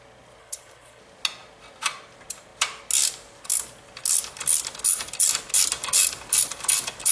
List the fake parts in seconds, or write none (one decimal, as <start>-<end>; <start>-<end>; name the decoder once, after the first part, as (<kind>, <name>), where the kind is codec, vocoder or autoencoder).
0.4-1.0 (codec, HILCodec)

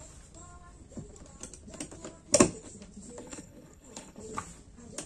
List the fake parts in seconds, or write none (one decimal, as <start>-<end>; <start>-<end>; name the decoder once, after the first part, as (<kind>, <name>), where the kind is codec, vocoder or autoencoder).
3.2-4.2 (codec, HILCodec)

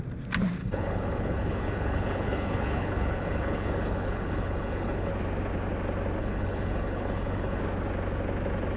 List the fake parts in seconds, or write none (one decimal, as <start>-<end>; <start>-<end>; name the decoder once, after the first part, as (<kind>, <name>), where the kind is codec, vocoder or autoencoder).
0.6-5.1 (codec, HILCodec); 6.2-7.6

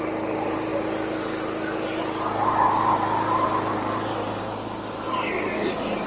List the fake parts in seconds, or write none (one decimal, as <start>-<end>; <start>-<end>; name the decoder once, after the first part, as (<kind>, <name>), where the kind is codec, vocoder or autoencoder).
none